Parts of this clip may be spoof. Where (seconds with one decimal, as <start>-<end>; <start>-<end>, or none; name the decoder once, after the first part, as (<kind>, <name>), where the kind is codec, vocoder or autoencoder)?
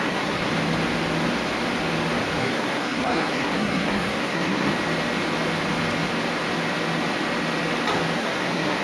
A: 0.0-0.5 (codec, SNAC); 2.4-4.7; 8.2-8.8